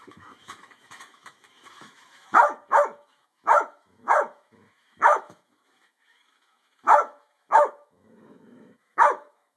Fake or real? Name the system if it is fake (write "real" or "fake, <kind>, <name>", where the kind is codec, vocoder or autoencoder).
fake, autoencoder, DAC-VAE